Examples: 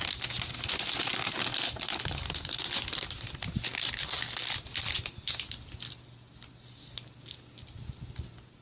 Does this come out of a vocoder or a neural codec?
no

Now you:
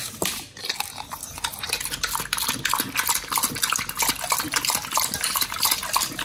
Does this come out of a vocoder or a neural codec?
no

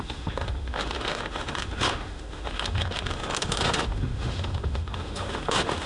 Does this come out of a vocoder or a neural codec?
yes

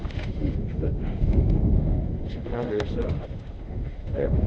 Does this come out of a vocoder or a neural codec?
yes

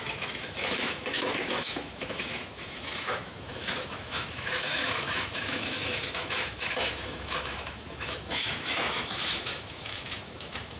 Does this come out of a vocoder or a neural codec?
yes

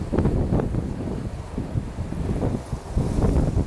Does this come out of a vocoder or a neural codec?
no